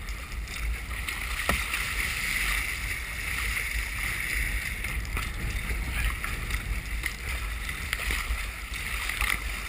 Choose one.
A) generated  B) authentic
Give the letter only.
B